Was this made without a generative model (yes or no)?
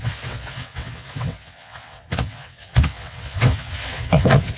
no